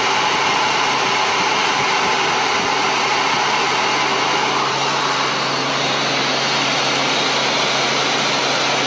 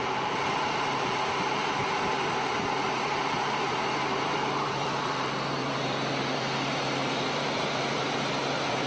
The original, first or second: first